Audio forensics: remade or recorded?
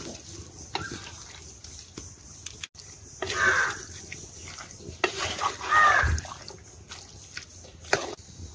recorded